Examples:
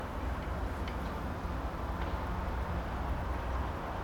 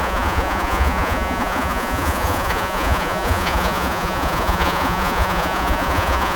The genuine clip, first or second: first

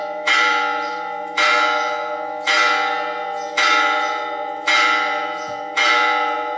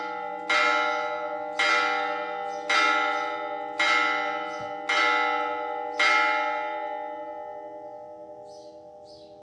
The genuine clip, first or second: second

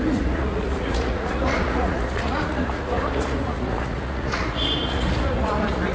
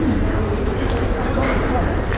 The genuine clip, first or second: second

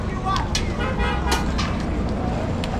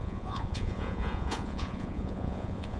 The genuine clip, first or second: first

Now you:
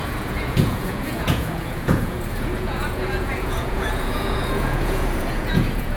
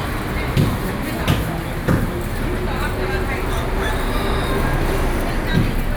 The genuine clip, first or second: second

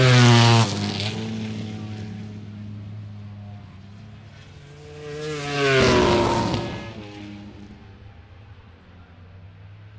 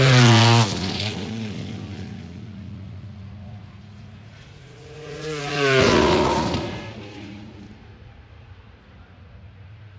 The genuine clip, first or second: first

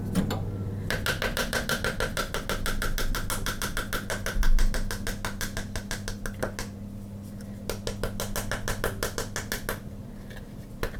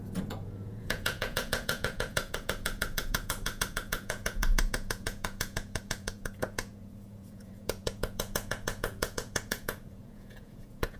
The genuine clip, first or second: first